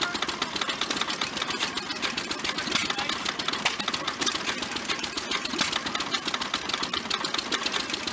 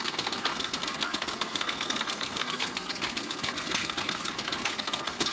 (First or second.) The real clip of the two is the first